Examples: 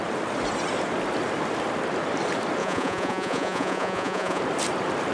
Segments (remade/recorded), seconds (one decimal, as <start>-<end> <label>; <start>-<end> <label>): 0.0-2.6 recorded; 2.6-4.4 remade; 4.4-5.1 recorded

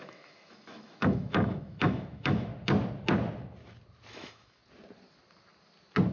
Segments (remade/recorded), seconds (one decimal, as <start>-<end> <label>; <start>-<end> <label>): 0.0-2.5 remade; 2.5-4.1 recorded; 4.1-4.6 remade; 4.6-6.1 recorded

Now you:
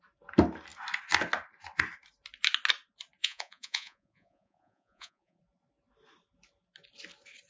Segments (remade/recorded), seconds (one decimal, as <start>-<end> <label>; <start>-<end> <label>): 0.0-3.2 recorded; 3.2-5.4 remade; 5.4-7.5 recorded

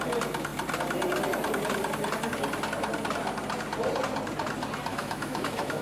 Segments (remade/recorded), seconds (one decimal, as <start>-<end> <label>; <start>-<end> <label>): 0.0-4.9 recorded; 4.9-5.8 remade

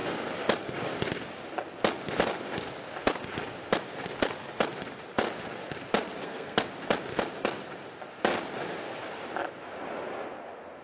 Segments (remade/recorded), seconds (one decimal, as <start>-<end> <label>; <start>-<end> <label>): 0.0-6.2 recorded; 6.2-6.7 remade; 6.7-10.8 recorded

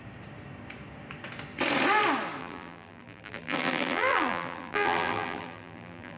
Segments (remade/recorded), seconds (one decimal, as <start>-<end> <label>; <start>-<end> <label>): 0.0-2.4 recorded; 2.4-6.2 remade

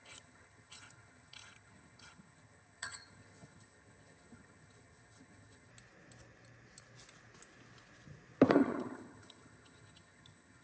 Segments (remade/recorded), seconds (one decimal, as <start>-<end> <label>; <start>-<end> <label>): 0.0-5.7 remade; 5.7-8.5 recorded; 8.5-10.6 remade